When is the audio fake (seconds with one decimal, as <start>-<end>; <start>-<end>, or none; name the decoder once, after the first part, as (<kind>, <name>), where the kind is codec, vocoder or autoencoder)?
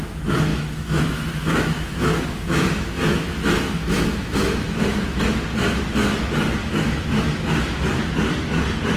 0.5-5.2 (autoencoder, DAC-VAE); 6.6-8.1